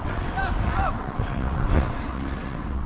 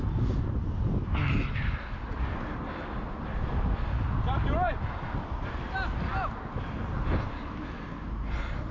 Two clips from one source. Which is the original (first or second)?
second